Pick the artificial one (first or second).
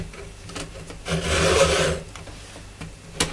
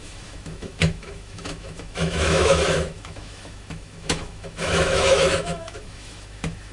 second